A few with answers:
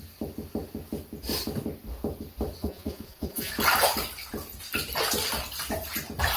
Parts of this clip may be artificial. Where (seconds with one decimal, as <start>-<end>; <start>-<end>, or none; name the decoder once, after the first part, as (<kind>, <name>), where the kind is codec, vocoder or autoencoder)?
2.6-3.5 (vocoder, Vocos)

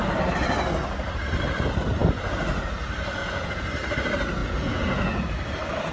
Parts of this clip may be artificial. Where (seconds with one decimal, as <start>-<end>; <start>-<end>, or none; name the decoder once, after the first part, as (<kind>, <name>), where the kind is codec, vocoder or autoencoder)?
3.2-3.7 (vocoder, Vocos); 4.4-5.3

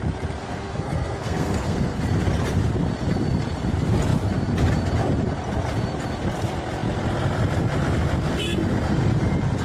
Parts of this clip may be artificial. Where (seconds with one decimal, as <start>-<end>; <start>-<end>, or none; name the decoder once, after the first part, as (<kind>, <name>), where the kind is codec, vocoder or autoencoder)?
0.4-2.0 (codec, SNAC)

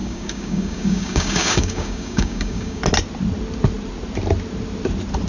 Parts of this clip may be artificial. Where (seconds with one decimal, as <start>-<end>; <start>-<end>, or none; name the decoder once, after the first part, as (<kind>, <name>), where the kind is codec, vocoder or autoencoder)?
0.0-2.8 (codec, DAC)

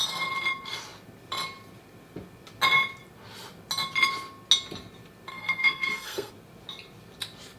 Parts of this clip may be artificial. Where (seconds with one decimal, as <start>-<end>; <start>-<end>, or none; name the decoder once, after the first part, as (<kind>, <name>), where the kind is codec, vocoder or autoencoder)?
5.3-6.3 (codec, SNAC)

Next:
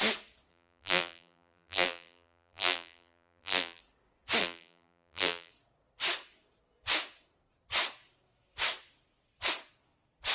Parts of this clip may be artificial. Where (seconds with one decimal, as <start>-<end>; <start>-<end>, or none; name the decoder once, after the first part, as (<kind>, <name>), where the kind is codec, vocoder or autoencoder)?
0.5-3.8 (vocoder, BigVGAN v2); 4.4-5.5

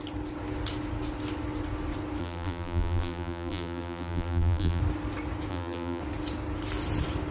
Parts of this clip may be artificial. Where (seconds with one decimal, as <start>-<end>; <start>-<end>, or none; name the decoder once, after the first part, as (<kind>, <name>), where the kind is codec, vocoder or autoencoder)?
2.2-4.8 (vocoder, BigVGAN v2); 5.5-6.0

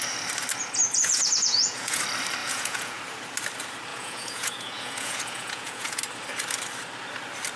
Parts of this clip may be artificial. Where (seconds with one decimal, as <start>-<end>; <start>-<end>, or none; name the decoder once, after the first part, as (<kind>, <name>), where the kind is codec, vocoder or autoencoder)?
0.8-2.0 (vocoder, Vocos); 2.4-3.0; 3.9-6.0